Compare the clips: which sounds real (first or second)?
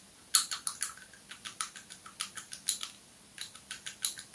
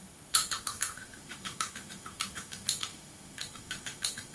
first